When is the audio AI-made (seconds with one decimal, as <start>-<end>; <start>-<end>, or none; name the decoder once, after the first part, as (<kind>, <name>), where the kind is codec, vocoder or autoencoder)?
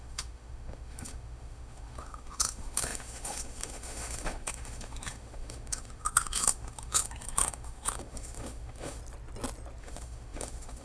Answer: 0.0-9.0 (autoencoder, DAC-VAE); 9.8-10.8